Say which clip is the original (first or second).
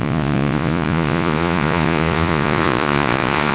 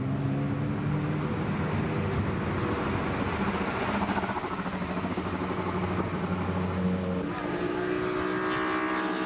second